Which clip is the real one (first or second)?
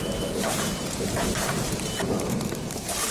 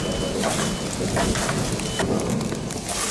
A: second